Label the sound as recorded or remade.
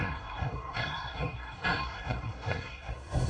remade